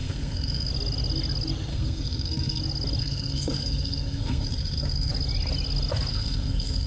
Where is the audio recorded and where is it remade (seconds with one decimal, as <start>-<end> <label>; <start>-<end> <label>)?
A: 0.0-0.7 remade; 0.7-1.7 recorded; 1.7-2.6 remade; 2.6-3.0 recorded; 3.0-5.1 remade; 5.1-6.1 recorded; 6.1-6.9 remade